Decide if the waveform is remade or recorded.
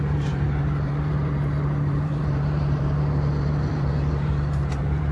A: remade